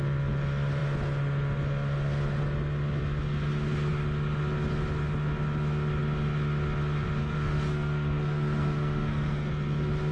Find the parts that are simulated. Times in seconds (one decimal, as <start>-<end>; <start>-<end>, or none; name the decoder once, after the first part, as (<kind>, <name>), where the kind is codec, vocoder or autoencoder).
7.2-9.5 (codec, SNAC)